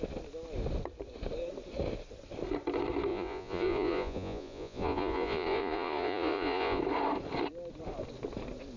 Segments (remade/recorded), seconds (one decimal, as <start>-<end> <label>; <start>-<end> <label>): 0.0-3.1 recorded; 3.1-6.8 remade; 6.8-8.8 recorded